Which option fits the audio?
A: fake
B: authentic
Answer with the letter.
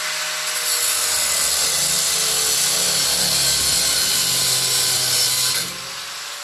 B